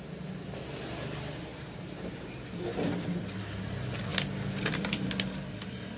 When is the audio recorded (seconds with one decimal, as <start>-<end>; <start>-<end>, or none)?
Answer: 0.0-1.5; 2.1-6.0